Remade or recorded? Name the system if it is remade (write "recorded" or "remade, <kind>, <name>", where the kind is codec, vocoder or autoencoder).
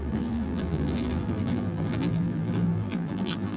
remade, vocoder, BigVGAN v2